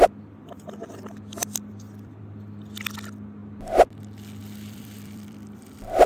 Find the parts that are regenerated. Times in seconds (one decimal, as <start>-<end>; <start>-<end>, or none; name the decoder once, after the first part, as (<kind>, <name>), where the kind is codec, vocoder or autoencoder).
1.4-2.2 (vocoder, BigVGAN v2); 4.4-5.6